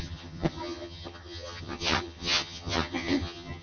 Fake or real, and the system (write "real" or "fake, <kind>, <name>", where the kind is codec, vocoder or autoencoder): fake, vocoder, HiFi-GAN